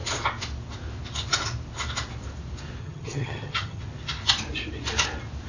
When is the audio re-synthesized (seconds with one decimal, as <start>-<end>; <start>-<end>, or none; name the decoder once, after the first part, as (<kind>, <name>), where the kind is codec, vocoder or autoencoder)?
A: 2.8-3.8 (vocoder, HiFi-GAN)